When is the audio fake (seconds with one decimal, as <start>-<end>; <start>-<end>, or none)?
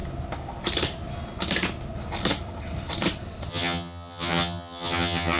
3.5-5.4